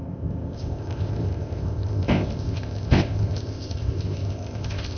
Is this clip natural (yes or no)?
no